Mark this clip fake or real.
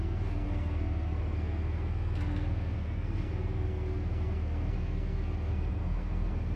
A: fake